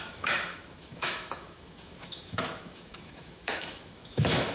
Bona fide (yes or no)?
no